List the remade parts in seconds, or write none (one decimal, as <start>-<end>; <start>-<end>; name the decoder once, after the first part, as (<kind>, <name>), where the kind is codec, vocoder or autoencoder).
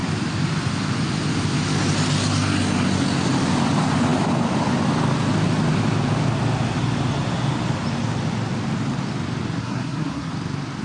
9.6-10.3 (codec, SNAC)